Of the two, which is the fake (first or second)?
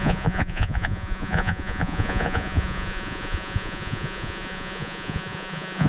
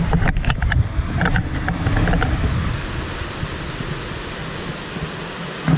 first